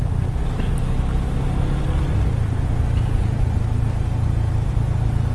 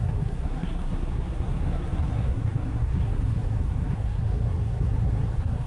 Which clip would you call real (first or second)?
first